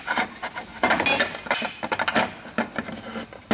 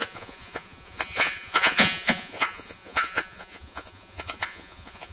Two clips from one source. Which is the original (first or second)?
first